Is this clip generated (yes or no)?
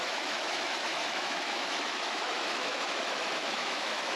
yes